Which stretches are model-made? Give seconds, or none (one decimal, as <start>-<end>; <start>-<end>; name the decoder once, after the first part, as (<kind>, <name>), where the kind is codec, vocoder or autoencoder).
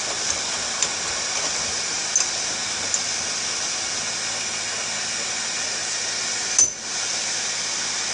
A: none